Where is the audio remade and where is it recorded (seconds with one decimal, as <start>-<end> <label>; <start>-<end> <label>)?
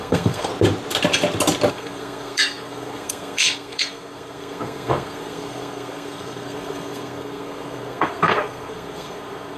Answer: 0.0-0.5 remade; 0.5-1.7 recorded; 1.7-9.6 remade